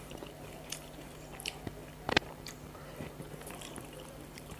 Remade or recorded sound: remade